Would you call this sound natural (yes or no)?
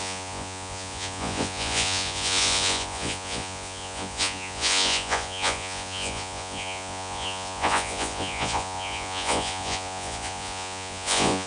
no